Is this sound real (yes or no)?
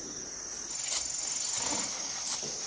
yes